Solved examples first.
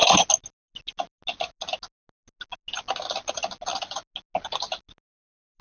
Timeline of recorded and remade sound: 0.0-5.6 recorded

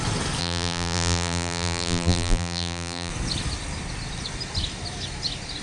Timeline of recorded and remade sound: 0.0-0.4 recorded; 0.4-3.1 remade; 3.1-5.6 recorded

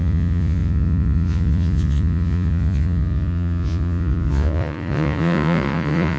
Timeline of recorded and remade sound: 0.0-6.2 remade

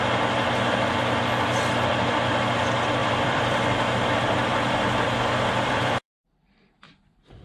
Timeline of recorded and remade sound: 0.0-3.0 recorded; 3.0-6.5 remade; 6.5-7.4 recorded

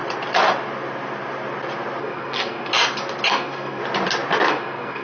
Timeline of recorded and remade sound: 0.0-2.0 recorded; 2.0-2.7 remade; 2.7-3.3 recorded; 3.3-3.8 remade; 3.8-4.5 recorded; 4.5-5.0 remade